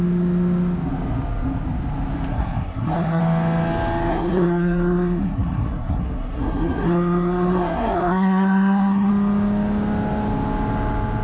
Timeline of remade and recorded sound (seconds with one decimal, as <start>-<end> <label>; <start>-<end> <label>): 0.0-2.3 recorded; 2.3-3.2 remade; 3.2-4.1 recorded; 4.1-9.1 remade; 9.1-11.2 recorded